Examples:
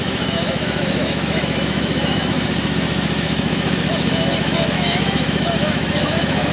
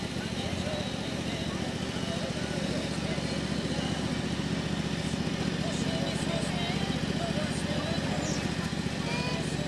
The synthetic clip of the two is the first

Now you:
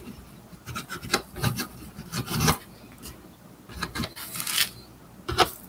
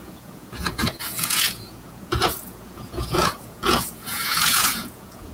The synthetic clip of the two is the second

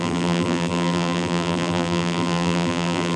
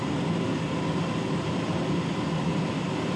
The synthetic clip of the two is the first